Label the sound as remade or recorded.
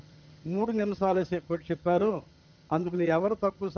remade